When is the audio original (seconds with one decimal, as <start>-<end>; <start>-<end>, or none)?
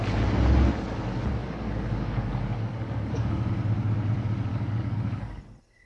0.0-1.4; 3.5-4.5; 5.4-5.9